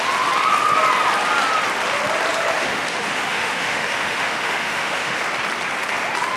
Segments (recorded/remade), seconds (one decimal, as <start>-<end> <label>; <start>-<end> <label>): 0.0-2.5 recorded; 2.5-5.2 remade; 5.2-6.4 recorded